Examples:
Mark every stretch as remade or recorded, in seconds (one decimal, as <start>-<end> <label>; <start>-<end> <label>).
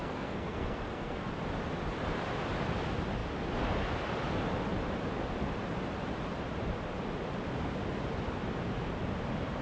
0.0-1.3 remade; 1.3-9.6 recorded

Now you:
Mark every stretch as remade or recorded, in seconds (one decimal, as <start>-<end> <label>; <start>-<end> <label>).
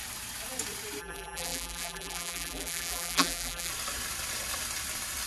0.0-1.0 recorded; 1.0-3.7 remade; 3.7-5.3 recorded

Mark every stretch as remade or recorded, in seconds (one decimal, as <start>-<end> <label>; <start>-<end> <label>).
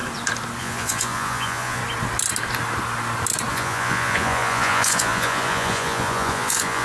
0.0-0.6 recorded; 0.6-1.8 remade; 1.8-3.5 recorded; 3.5-6.8 remade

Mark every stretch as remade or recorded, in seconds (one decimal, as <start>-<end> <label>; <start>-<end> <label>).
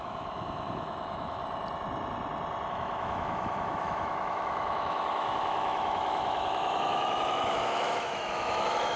0.0-1.4 remade; 1.4-2.7 recorded; 2.7-9.0 remade